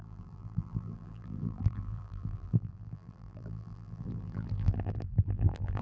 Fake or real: fake